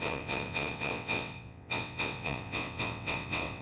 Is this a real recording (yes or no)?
no